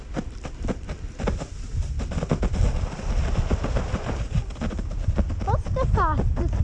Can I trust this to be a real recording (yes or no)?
yes